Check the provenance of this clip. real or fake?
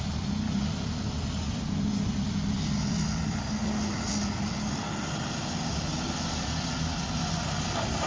real